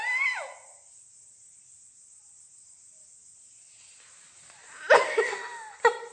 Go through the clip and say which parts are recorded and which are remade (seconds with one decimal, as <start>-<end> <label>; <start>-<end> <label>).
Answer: 0.0-6.1 recorded